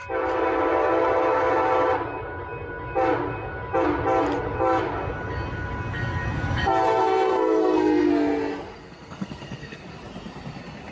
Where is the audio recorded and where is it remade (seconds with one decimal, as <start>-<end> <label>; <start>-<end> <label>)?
0.0-7.0 recorded; 7.0-8.1 remade; 8.1-8.8 recorded; 8.8-9.8 remade; 9.8-10.9 recorded